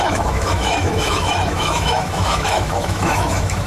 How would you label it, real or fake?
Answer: fake